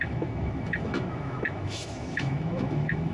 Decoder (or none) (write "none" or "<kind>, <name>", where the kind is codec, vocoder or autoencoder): autoencoder, DAC-VAE